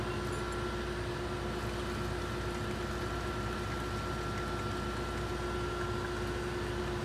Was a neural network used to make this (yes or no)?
no